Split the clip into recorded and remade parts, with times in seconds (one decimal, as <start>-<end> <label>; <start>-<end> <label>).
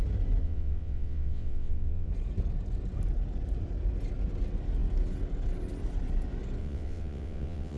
0.0-0.4 recorded; 0.4-2.1 remade; 2.1-6.6 recorded; 6.6-7.8 remade